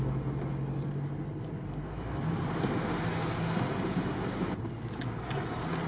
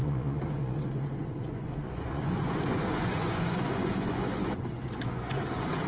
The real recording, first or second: first